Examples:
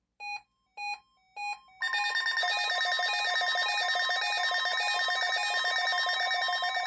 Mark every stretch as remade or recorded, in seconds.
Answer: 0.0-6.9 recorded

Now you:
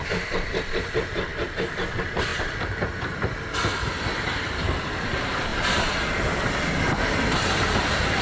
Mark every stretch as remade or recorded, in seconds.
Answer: 0.0-8.2 recorded

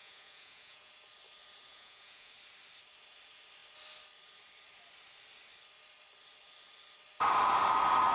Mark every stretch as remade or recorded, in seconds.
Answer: 0.0-0.9 remade; 0.9-1.7 recorded; 1.7-2.3 remade; 2.3-8.1 recorded

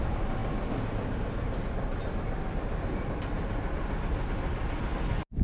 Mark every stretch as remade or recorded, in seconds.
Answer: 0.0-5.4 recorded